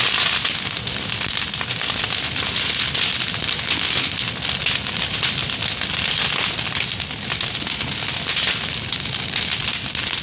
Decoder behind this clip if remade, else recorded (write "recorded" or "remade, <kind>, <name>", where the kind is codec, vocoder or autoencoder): recorded